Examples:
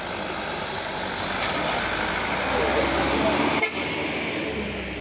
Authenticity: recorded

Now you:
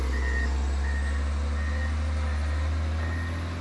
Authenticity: recorded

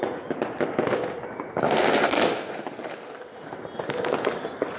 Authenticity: recorded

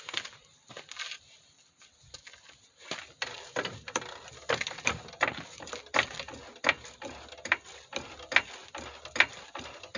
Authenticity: recorded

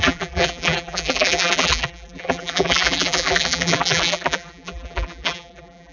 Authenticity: remade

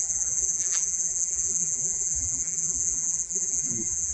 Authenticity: remade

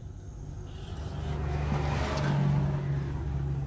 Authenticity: recorded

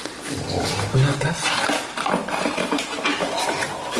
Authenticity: recorded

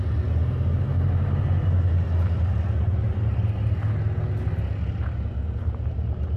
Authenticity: recorded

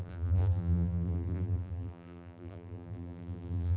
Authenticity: remade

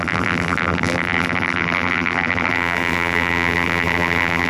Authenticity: remade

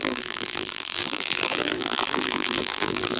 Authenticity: remade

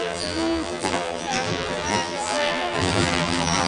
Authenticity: remade